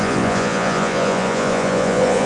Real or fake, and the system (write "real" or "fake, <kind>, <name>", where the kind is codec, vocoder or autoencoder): fake, vocoder, Vocos